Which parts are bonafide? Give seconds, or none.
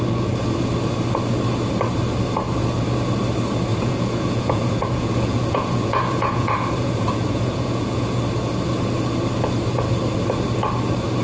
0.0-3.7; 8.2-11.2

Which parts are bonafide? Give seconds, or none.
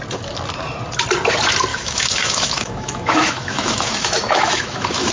0.0-1.7